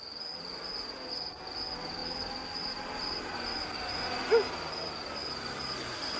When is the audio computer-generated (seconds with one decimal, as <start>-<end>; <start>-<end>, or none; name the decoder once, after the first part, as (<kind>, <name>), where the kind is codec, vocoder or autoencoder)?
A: none